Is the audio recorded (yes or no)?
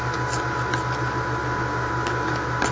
yes